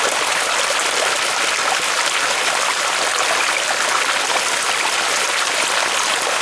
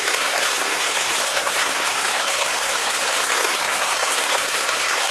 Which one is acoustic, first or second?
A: first